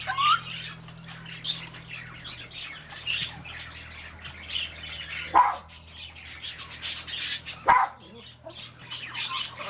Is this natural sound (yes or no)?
yes